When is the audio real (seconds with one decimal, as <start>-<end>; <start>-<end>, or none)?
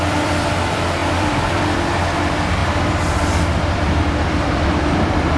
none